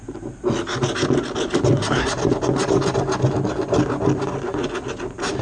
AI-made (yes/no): no